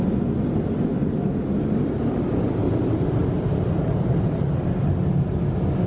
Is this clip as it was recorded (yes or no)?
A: yes